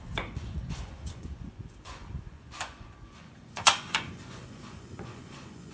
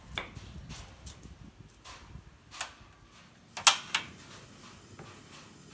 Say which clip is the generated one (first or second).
first